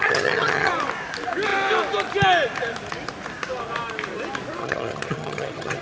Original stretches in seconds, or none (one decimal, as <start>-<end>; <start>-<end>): 0.7-4.6

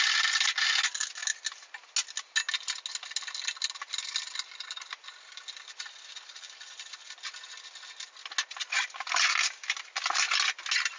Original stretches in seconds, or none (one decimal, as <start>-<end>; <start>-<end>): 0.0-11.0

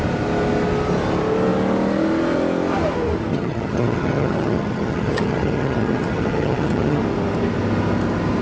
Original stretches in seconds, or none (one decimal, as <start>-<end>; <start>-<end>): 0.0-3.3; 7.0-8.4